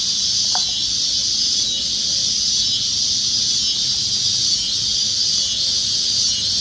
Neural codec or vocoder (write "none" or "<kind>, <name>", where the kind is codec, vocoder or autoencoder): none